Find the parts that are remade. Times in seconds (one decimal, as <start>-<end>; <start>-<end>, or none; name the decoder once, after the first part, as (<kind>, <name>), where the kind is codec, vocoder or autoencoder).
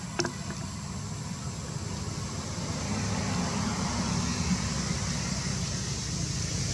none